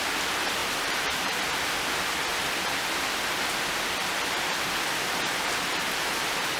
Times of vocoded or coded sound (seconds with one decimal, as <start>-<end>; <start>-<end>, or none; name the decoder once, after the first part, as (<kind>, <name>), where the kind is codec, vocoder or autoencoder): 0.6-1.4 (vocoder, BigVGAN v2)